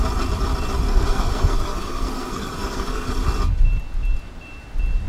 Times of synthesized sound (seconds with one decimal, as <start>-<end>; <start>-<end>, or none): 0.9-3.1